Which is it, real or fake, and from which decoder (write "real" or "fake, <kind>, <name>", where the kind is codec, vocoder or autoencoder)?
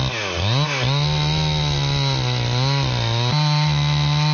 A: real